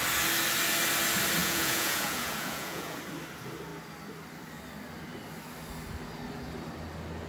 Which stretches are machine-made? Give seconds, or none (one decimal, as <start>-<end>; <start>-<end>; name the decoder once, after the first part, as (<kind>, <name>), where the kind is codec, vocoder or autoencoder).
1.4-3.0 (vocoder, Vocos)

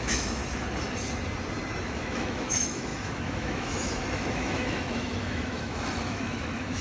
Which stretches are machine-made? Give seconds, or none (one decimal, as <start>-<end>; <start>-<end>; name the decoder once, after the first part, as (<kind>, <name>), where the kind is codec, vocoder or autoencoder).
0.0-0.4 (autoencoder, DAC-VAE); 1.8-6.8

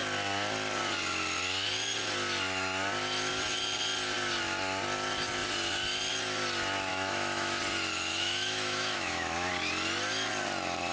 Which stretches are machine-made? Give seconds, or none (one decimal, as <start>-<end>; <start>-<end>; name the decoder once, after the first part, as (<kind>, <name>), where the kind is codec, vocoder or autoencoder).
6.9-7.6 (autoencoder, DAC-VAE); 8.1-9.5

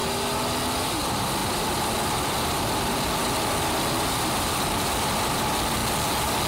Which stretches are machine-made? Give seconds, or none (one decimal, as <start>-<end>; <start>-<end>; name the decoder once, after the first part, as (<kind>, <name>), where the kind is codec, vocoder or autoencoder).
0.9-5.8 (vocoder, BigVGAN v2)